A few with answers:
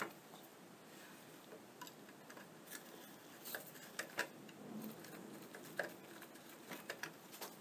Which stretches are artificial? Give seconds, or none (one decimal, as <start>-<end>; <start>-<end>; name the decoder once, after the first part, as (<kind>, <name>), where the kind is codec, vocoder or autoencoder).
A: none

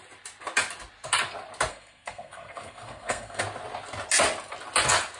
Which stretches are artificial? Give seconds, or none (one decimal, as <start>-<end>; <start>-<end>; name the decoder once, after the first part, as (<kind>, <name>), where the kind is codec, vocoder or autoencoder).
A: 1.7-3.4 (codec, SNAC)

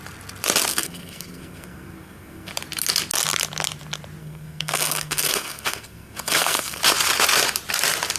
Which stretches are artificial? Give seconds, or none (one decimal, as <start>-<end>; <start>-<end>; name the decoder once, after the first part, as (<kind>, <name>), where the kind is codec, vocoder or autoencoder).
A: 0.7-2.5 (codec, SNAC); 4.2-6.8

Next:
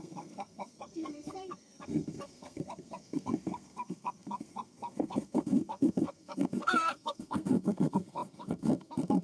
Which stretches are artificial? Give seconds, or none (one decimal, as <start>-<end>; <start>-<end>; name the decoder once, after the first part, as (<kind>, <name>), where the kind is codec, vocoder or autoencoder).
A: 0.0-9.2 (codec, SNAC)